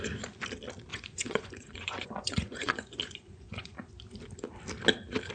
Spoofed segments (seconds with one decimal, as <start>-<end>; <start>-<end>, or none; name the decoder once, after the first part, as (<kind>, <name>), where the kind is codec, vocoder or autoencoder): 0.9-3.9 (vocoder, Vocos)